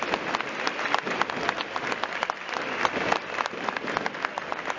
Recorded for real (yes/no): yes